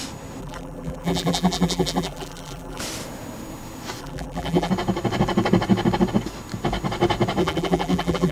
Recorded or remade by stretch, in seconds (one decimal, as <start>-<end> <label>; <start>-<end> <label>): 0.0-0.4 recorded; 0.4-2.8 remade; 2.8-4.0 recorded; 4.0-4.7 remade; 4.7-7.4 recorded; 7.4-8.3 remade